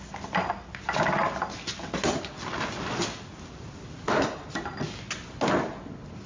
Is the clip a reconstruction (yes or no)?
no